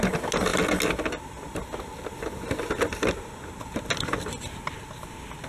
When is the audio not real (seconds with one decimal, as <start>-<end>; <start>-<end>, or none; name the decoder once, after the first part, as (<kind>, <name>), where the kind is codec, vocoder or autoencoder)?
none